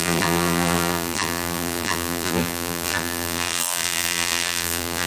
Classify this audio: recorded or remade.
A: remade